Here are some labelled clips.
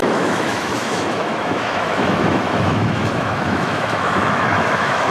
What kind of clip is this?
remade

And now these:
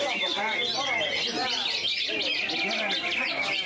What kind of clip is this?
recorded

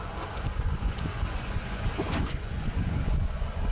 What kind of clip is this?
remade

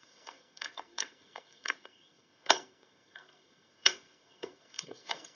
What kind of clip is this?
remade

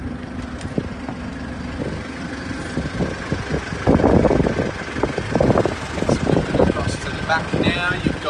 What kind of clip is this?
recorded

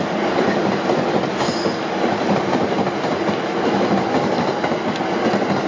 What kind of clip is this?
recorded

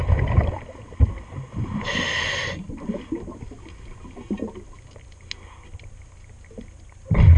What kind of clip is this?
recorded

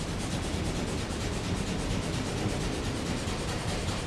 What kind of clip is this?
recorded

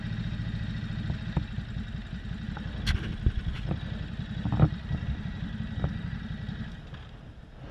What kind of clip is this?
recorded